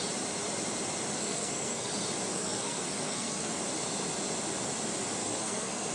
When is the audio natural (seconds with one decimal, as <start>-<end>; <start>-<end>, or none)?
0.0-1.2; 1.9-2.3; 3.6-5.2